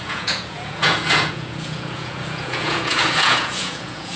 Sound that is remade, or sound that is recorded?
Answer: remade